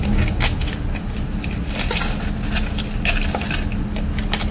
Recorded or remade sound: recorded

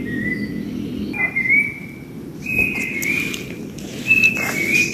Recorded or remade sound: recorded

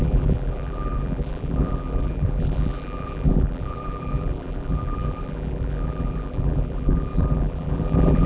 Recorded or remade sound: remade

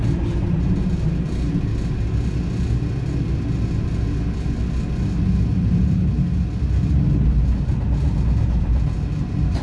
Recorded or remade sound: recorded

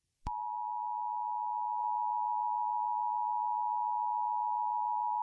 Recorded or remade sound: recorded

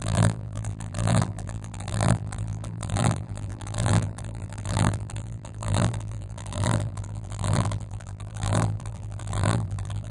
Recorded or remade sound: remade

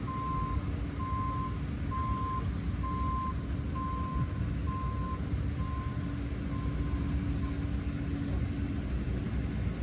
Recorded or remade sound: recorded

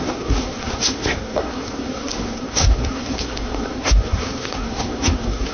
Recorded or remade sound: remade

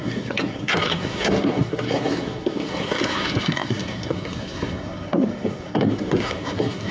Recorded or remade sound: remade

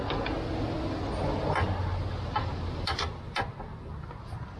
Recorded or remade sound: recorded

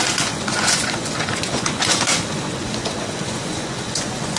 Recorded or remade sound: remade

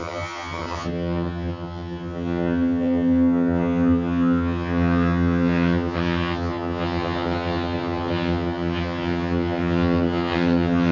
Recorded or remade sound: remade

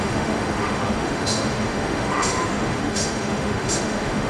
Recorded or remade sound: remade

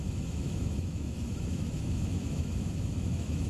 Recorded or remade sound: remade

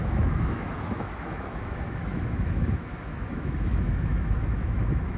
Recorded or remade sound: remade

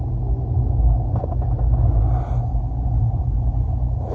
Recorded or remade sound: recorded